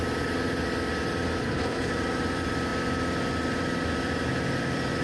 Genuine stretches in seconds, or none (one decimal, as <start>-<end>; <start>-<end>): 0.0-1.4; 1.9-5.0